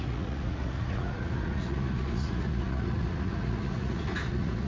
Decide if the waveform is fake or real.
fake